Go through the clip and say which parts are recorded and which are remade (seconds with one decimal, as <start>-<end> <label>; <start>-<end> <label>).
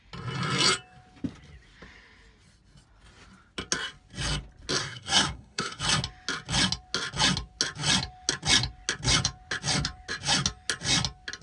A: 0.0-4.8 recorded; 4.8-5.8 remade; 5.8-11.4 recorded